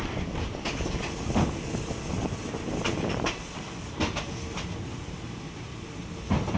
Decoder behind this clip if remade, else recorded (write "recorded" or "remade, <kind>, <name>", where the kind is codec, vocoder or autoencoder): recorded